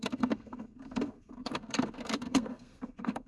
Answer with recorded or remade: remade